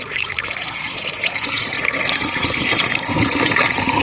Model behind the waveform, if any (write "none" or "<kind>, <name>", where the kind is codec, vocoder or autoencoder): vocoder, Vocos